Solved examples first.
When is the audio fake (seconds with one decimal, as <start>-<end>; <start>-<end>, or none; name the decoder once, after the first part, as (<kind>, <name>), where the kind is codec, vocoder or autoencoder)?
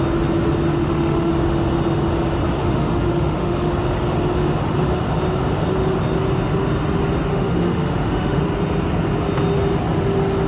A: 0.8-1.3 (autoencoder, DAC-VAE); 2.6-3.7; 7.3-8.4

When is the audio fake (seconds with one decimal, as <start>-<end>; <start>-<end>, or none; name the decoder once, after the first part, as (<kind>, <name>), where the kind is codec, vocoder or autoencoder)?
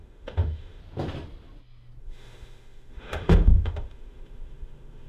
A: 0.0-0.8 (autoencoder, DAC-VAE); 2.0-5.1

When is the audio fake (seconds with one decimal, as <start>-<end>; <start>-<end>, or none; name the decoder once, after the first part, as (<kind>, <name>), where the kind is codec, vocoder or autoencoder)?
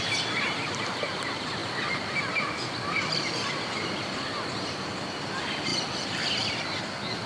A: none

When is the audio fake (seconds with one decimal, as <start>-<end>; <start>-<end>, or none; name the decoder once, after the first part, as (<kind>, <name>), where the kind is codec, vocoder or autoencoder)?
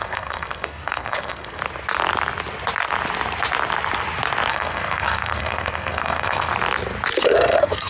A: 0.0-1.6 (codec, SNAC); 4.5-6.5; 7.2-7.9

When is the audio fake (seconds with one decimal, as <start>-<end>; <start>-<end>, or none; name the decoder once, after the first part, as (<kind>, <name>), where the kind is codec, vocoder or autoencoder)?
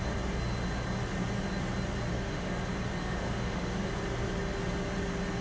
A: 2.1-2.6 (autoencoder, DAC-VAE); 3.0-3.8